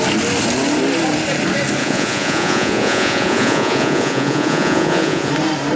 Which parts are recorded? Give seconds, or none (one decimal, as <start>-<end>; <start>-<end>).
0.0-1.8; 5.3-5.8